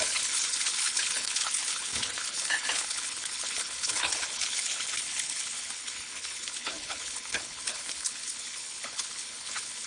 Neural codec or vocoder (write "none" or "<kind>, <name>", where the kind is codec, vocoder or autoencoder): codec, HILCodec